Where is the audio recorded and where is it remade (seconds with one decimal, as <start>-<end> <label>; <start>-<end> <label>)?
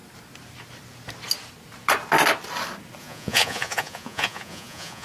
0.0-3.0 recorded; 3.0-5.0 remade